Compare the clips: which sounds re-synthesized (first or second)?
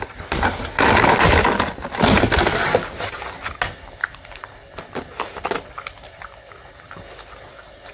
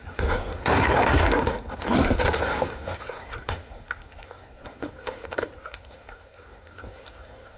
second